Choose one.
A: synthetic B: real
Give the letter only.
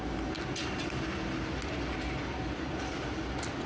B